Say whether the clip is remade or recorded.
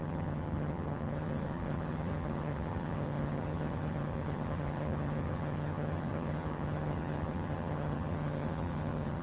remade